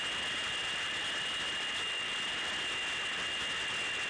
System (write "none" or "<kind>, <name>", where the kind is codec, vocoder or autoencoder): none